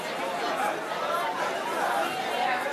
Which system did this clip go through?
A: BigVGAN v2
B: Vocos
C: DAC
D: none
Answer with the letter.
D